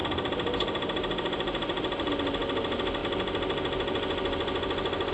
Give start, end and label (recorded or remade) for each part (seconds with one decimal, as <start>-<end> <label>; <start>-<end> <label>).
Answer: 0.0-2.1 remade; 2.1-5.1 recorded